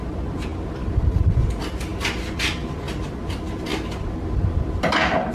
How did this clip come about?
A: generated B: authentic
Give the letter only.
B